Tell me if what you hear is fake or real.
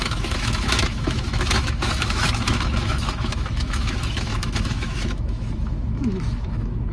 fake